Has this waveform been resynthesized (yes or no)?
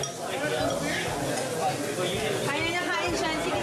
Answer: no